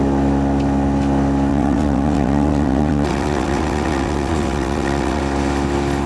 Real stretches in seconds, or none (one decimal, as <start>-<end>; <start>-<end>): 0.0-1.5; 5.2-6.1